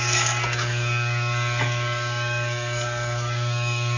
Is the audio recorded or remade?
remade